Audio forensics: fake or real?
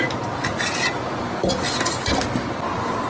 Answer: real